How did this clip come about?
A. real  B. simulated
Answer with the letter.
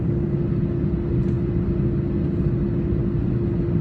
A